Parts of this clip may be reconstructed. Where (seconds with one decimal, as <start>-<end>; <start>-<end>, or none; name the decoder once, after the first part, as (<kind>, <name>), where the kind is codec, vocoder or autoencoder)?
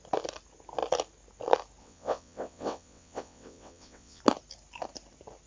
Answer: 1.8-4.2 (vocoder, WaveNeXt)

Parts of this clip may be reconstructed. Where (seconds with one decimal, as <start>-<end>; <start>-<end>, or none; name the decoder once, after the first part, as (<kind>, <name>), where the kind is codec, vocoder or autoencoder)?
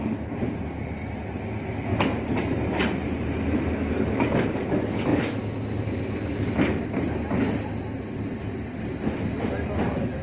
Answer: none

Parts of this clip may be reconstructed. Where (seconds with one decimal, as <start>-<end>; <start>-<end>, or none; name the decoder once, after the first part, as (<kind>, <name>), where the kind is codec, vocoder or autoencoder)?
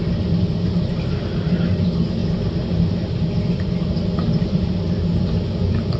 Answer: none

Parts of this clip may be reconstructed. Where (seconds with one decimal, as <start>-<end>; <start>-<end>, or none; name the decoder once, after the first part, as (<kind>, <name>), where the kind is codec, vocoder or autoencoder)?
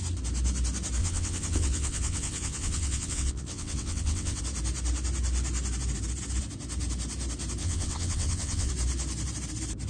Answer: 1.0-4.4 (vocoder, WaveNeXt); 7.6-8.7